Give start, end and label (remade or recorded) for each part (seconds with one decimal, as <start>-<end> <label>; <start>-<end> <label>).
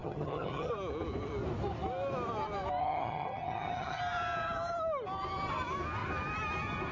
0.0-0.7 remade; 0.7-2.8 recorded; 2.8-4.0 remade; 4.0-6.9 recorded